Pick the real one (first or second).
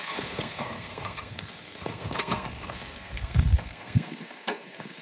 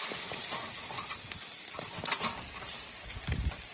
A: second